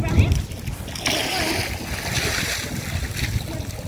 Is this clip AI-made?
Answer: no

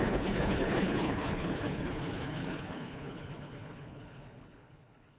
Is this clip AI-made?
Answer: yes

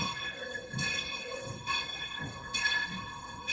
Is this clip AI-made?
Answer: yes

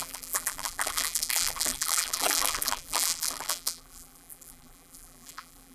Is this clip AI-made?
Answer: yes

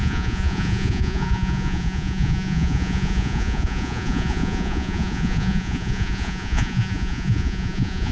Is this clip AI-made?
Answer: yes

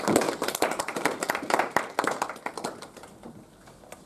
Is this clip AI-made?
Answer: no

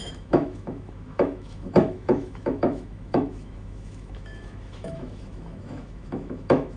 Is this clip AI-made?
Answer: yes